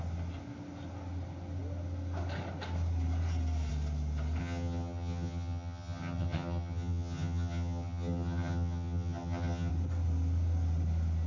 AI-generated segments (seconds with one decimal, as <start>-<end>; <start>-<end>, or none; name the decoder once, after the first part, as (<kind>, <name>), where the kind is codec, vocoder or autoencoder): 4.4-9.7 (vocoder, HiFi-GAN)